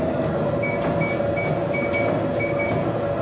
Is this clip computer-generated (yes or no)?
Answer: no